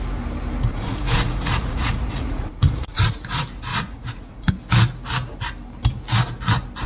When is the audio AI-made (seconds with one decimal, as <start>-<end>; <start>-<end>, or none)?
0.7-3.1; 3.7-4.5